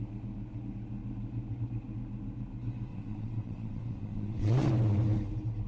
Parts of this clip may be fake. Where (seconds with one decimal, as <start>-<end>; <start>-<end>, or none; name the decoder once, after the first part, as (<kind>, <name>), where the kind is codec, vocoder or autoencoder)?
2.9-4.7 (vocoder, WaveNeXt)